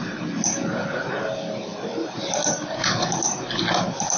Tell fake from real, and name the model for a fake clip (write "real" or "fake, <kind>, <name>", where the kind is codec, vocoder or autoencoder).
real